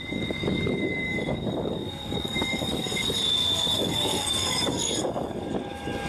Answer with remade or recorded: remade